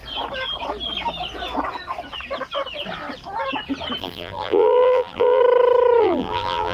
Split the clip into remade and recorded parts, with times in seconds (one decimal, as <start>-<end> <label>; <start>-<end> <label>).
0.0-4.0 recorded; 4.0-5.4 remade; 5.4-6.0 recorded; 6.0-6.7 remade